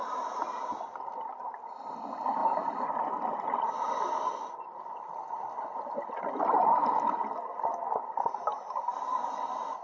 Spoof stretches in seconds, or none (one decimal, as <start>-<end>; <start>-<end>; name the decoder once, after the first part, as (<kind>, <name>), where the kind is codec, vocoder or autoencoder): none